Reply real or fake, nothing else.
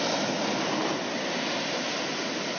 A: real